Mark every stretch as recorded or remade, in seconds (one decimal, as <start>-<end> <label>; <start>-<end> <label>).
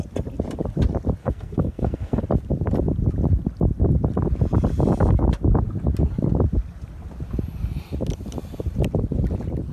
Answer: 0.0-1.2 recorded; 1.2-2.2 remade; 2.2-9.7 recorded